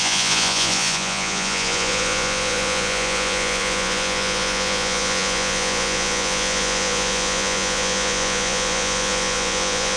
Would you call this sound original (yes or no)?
no